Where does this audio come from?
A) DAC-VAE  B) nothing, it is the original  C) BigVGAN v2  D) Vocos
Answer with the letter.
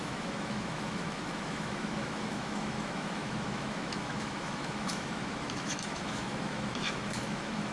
A